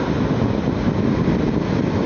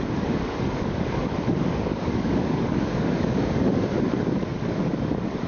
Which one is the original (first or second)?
first